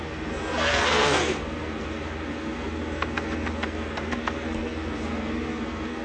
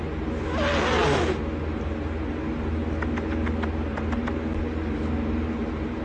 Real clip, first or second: second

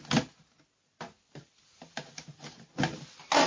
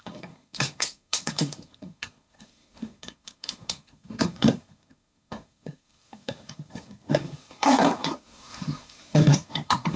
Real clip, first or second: first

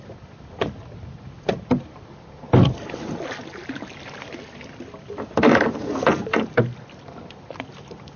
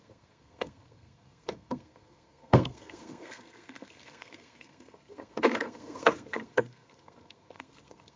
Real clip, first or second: first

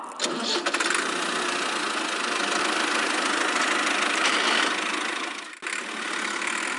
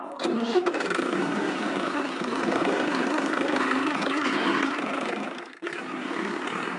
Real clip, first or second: first